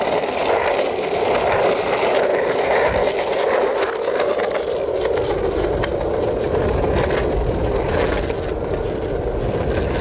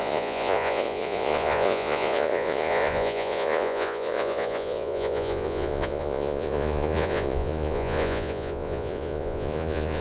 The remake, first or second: second